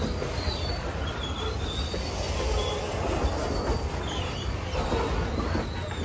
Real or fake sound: real